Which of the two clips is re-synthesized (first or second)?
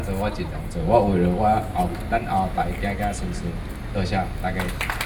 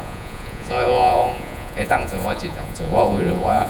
second